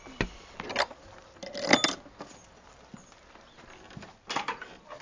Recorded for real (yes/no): yes